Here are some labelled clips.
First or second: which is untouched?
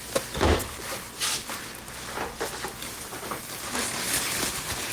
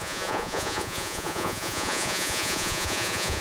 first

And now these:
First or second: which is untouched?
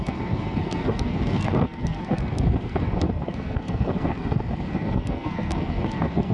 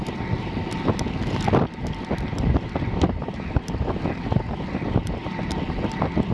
second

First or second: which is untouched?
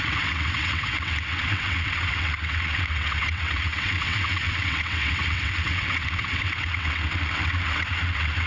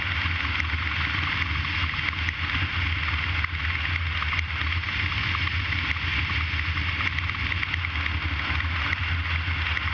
second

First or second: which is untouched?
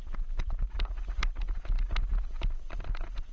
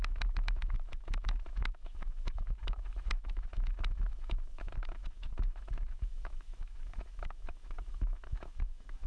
first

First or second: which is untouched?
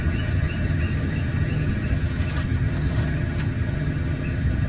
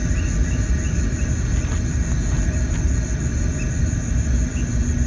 second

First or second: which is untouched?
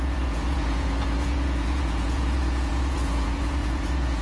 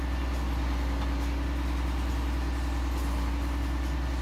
second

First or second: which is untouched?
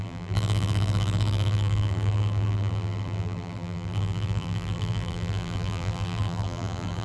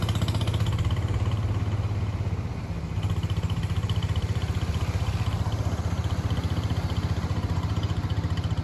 second